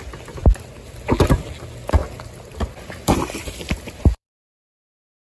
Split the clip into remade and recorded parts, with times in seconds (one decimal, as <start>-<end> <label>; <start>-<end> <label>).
0.0-2.0 recorded; 2.0-4.3 remade; 4.3-5.4 recorded